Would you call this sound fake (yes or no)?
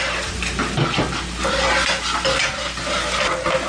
no